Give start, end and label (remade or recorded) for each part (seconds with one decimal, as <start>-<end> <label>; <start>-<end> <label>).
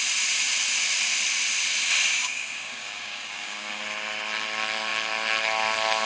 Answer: 0.0-2.1 recorded; 2.1-3.8 remade; 3.8-6.1 recorded